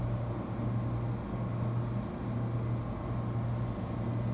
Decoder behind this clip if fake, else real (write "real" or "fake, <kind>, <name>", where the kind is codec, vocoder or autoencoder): real